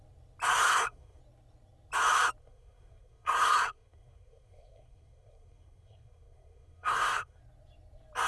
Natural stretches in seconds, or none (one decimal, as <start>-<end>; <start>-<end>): 0.0-0.5; 1.2-2.4; 7.4-8.3